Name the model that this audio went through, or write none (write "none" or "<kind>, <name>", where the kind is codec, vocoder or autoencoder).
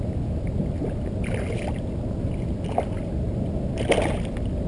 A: none